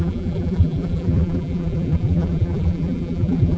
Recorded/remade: remade